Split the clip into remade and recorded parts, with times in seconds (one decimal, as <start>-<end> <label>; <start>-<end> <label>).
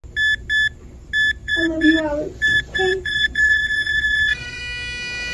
0.0-1.4 recorded; 1.4-4.6 remade; 4.6-5.3 recorded